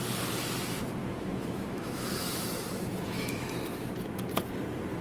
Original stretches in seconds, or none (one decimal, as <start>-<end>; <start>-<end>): 0.0-1.0; 3.9-5.0